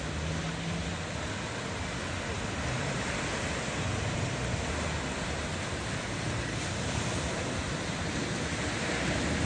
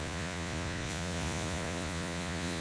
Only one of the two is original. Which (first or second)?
first